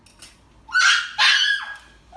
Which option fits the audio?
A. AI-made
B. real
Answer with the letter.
B